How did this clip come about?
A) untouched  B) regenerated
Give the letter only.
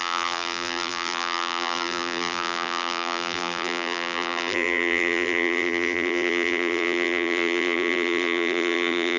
B